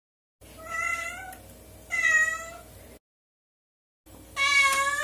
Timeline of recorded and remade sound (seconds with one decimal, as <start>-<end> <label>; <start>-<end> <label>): 0.0-5.0 recorded